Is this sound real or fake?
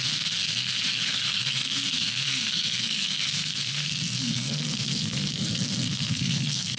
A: fake